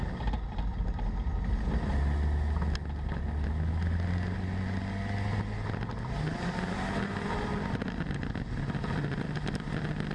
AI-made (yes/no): no